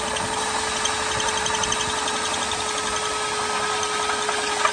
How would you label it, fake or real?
real